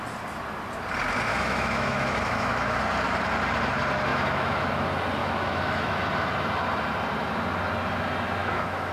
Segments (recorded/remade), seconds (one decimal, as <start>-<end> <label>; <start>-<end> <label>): 0.0-1.3 recorded; 1.3-2.8 remade; 2.8-4.1 recorded; 4.1-4.7 remade; 4.7-5.2 recorded; 5.2-6.0 remade; 6.0-8.4 recorded; 8.4-8.9 remade